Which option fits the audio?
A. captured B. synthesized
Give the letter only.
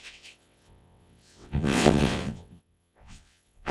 B